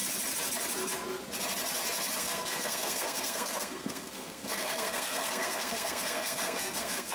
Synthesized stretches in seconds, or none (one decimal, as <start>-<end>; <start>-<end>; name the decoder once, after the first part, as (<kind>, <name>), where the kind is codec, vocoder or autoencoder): 2.2-7.1 (codec, SNAC)